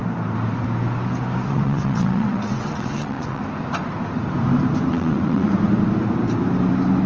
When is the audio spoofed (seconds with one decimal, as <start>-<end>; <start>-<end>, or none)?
1.5-3.4; 4.9-5.5

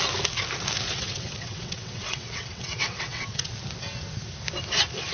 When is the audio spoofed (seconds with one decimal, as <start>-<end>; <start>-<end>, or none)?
0.9-3.5

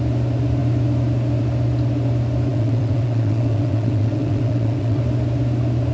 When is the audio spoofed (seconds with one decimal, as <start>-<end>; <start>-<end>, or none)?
2.5-5.0